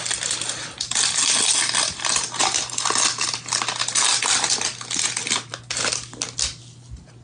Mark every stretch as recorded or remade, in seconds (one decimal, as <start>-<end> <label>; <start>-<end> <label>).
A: 0.0-7.2 recorded